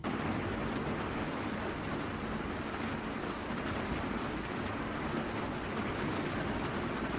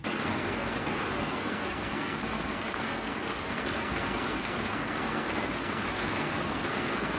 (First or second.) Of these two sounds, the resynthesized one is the second